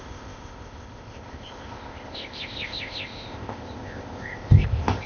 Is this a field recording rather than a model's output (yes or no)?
no